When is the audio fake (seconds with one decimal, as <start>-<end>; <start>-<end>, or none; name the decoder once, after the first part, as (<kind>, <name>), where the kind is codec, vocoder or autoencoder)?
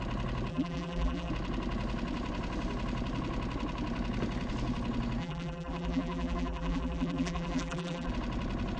0.5-1.3 (vocoder, BigVGAN v2); 5.2-8.1